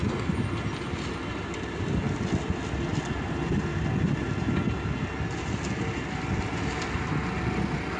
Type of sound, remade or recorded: recorded